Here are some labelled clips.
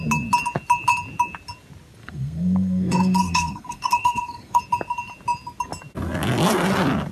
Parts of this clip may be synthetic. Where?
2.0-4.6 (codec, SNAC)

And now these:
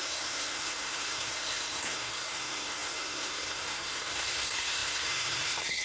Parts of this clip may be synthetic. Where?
0.0-5.8 (codec, SNAC)

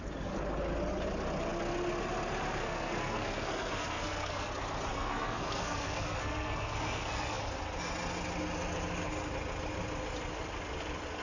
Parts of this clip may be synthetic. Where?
2.6-4.5 (codec, SNAC); 4.9-7.4

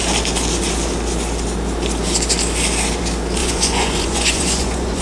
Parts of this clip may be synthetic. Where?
3.4-5.0 (vocoder, Vocos)

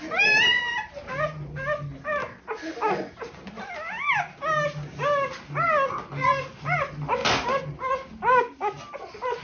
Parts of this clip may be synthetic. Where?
none